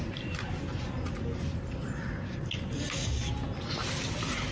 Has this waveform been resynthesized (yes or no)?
no